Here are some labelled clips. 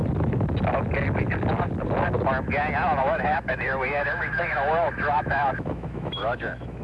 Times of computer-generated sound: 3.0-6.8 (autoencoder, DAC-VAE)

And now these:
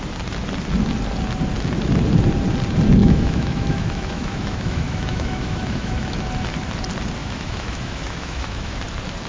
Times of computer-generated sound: 3.0-6.3 (autoencoder, DAC-VAE); 7.2-8.8

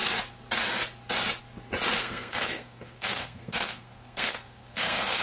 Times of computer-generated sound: 2.0-5.2 (codec, SNAC)

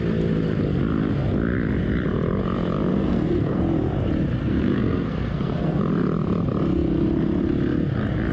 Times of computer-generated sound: 2.9-3.6 (codec, SNAC); 4.4-5.8

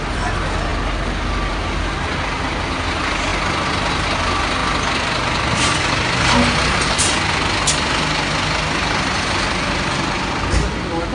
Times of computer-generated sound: none

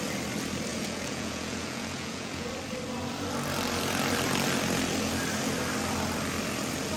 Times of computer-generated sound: 0.7-2.5 (vocoder, Vocos)